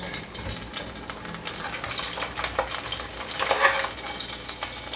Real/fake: real